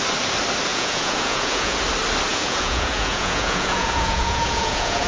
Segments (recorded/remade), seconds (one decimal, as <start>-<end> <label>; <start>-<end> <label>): 0.0-0.7 recorded; 0.7-1.8 remade; 1.8-2.3 recorded; 2.3-5.1 remade